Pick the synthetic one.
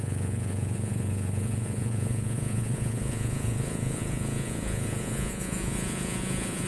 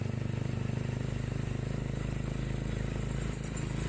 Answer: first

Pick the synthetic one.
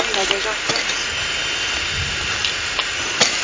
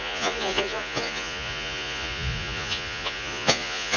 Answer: second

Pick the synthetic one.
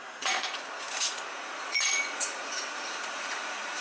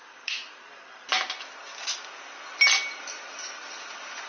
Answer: first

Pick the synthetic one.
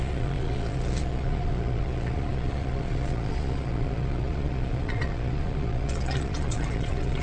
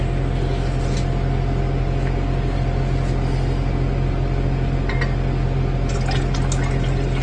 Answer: first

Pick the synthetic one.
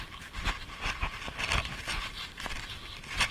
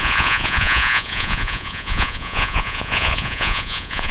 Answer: second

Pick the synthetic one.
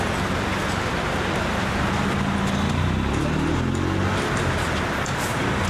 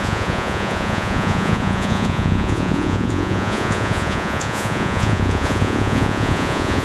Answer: second